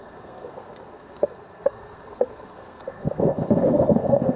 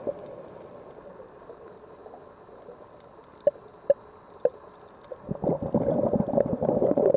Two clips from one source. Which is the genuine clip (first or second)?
second